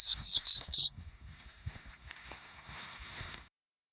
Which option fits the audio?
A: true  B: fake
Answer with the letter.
B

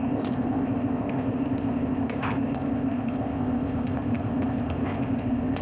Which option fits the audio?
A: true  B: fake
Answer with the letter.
B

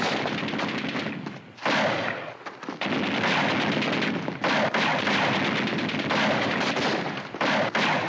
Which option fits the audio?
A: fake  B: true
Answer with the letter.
B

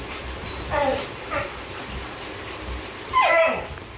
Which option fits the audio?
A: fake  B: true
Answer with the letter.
B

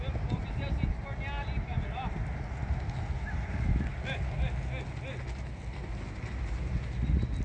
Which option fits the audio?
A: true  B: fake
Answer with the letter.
A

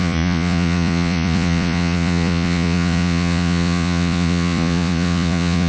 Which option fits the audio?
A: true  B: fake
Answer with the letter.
B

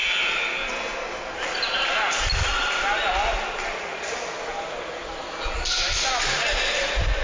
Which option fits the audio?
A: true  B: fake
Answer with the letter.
A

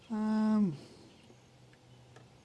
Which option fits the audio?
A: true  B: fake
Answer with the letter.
A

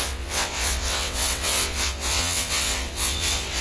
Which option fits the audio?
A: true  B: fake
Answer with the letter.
B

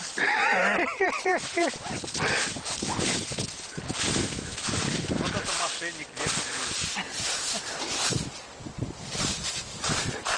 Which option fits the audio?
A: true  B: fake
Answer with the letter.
B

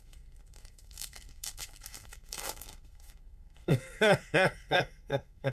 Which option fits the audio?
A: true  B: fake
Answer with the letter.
B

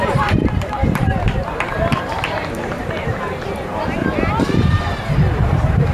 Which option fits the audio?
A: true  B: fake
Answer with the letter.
B